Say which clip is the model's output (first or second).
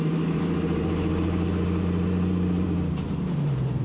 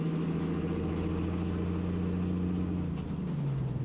first